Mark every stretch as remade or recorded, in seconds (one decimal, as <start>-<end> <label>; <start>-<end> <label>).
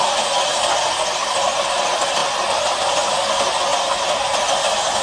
0.0-5.0 recorded